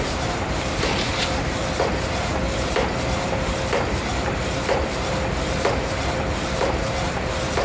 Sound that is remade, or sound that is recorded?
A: remade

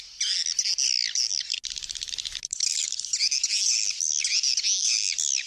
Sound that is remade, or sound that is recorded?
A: recorded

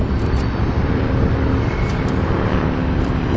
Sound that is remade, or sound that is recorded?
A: remade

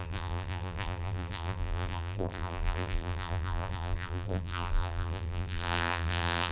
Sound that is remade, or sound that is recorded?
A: remade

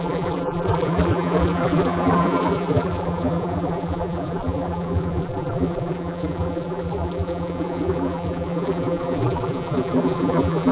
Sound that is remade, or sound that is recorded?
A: remade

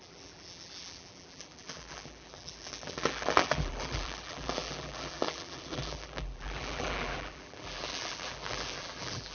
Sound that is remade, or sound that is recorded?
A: remade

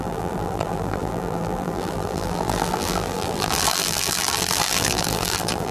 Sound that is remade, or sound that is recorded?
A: remade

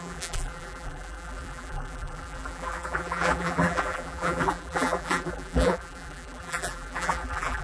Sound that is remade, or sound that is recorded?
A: remade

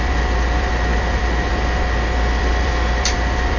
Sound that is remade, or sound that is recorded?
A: remade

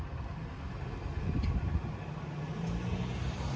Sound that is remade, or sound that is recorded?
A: recorded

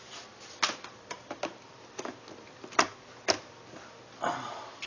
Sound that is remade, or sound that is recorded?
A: recorded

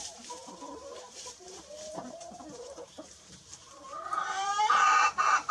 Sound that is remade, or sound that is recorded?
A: remade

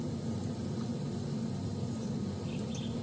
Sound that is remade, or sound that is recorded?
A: recorded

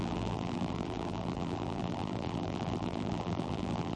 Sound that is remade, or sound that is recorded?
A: remade